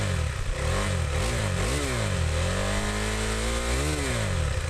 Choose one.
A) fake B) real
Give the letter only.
B